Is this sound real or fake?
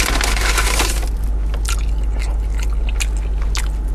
real